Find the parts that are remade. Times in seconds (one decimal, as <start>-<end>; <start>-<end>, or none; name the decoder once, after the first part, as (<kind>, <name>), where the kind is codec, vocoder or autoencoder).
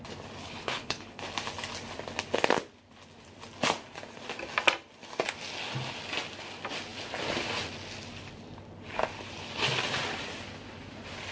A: 0.4-1.2 (codec, HILCodec)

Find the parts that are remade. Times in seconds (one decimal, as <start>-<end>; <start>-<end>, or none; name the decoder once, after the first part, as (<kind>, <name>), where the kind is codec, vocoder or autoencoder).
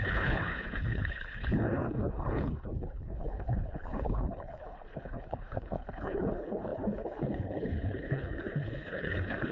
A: 0.0-9.5 (codec, HILCodec)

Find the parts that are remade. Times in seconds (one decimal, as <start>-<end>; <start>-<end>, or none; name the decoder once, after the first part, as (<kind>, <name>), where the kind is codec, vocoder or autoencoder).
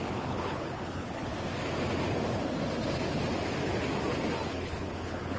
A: 0.0-1.3 (codec, HILCodec); 4.5-5.4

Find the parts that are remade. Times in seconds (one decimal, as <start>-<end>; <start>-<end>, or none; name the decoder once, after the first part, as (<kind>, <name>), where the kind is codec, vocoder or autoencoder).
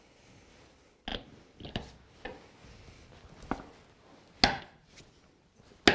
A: none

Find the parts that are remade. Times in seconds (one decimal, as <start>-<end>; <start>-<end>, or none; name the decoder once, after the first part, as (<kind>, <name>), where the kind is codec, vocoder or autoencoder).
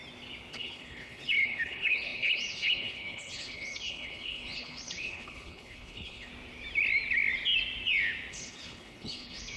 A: 0.5-6.3 (codec, HILCodec); 8.3-9.6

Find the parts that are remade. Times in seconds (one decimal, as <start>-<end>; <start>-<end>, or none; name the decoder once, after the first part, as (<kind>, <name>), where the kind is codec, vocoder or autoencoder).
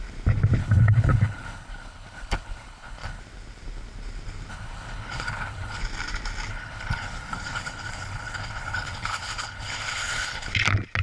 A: 0.6-3.2 (codec, HILCodec); 4.5-5.8; 6.5-10.5